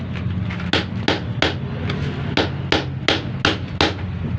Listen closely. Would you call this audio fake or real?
real